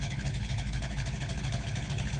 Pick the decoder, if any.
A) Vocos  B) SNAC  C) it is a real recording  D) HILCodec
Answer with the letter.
D